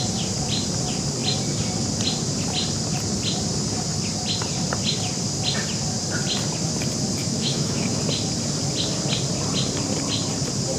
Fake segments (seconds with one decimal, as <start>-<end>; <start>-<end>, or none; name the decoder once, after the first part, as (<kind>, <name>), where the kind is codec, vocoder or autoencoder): 7.2-8.0 (autoencoder, DAC-VAE)